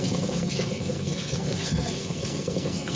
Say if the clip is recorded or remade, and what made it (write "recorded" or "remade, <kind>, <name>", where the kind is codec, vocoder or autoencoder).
remade, codec, SNAC